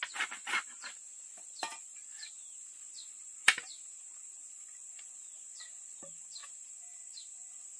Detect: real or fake real